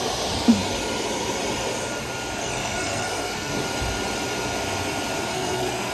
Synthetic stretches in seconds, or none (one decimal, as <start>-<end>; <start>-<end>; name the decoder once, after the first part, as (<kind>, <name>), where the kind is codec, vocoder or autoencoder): 2.4-3.5 (codec, SNAC); 5.3-5.9